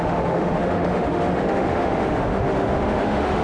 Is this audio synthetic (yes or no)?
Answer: yes